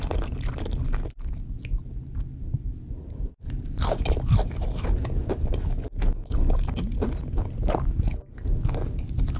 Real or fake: real